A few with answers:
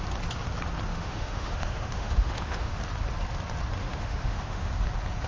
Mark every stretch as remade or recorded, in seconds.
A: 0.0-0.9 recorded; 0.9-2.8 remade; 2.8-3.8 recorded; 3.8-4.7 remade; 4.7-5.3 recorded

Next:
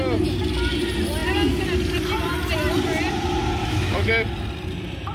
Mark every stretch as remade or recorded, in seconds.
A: 0.0-3.6 recorded; 3.6-4.1 remade; 4.1-5.1 recorded

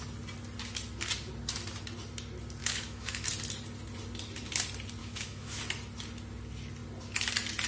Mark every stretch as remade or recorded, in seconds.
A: 0.0-2.6 recorded; 2.6-3.3 remade; 3.3-5.0 recorded; 5.0-5.6 remade; 5.6-7.7 recorded

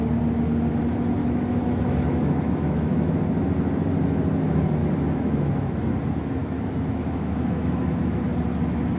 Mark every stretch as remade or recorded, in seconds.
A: 0.0-1.2 recorded; 1.2-3.2 remade; 3.2-4.8 recorded; 4.8-5.8 remade; 5.8-6.4 recorded; 6.4-8.2 remade; 8.2-9.0 recorded

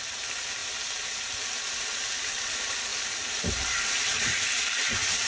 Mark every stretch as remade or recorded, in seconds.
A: 0.0-5.3 recorded

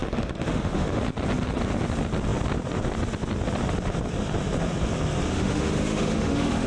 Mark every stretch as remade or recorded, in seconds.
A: 0.0-1.0 remade; 1.0-5.3 recorded; 5.3-6.7 remade

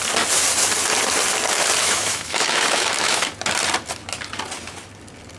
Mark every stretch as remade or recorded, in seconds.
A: 0.0-1.8 recorded; 1.8-3.3 remade; 3.3-5.4 recorded

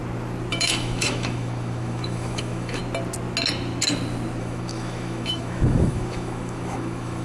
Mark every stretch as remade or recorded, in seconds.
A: 0.0-0.5 recorded; 0.5-2.8 remade; 2.8-4.4 recorded; 4.4-7.2 remade